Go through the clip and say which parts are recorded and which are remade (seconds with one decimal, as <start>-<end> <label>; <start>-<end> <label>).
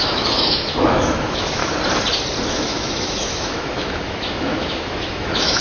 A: 0.0-1.6 remade; 1.6-2.5 recorded; 2.5-5.6 remade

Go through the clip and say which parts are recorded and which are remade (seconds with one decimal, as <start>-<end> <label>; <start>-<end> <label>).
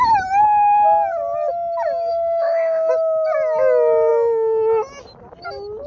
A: 0.0-2.1 recorded; 2.1-2.9 remade; 2.9-5.9 recorded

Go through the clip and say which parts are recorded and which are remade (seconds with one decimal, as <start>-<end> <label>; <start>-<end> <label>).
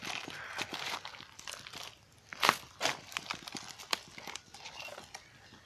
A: 0.0-5.7 recorded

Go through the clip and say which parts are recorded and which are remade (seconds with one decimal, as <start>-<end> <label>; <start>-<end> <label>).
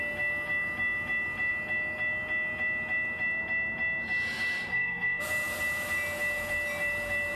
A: 0.0-4.7 recorded; 4.7-5.2 remade; 5.2-7.4 recorded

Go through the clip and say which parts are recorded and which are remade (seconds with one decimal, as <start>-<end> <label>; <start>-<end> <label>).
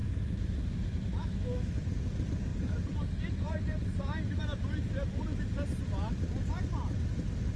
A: 0.0-1.7 remade; 1.7-7.6 recorded